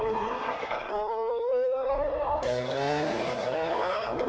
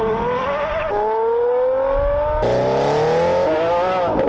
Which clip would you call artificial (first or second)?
first